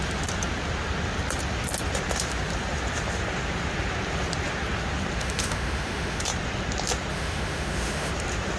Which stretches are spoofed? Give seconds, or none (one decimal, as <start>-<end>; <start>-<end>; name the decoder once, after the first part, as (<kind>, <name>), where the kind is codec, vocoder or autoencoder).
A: 5.2-6.2 (autoencoder, DAC-VAE); 7.1-8.1